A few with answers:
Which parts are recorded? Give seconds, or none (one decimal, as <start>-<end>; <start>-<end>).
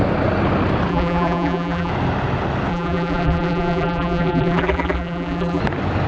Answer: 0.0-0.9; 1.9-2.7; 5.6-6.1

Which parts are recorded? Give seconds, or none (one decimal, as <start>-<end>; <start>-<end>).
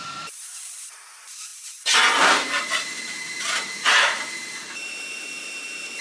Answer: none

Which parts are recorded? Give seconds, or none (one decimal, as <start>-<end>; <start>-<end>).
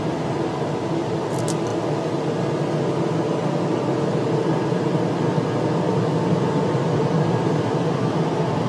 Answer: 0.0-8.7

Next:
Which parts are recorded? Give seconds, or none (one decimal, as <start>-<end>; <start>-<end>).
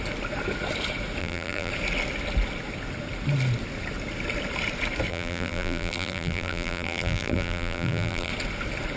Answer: 0.0-1.2; 1.7-5.1; 8.3-9.0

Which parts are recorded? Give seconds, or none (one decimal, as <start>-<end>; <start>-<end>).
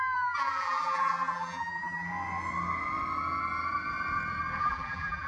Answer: 2.1-4.6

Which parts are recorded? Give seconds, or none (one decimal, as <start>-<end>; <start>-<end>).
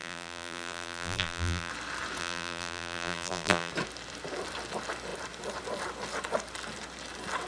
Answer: 1.7-2.2; 3.7-7.5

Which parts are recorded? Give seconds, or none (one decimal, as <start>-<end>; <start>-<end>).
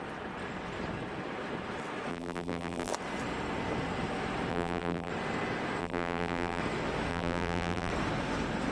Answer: 0.0-2.1; 2.9-4.5; 5.1-5.8; 6.6-7.1; 7.9-8.7